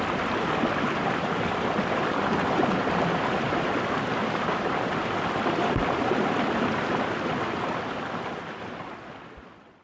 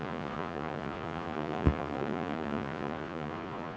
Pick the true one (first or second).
first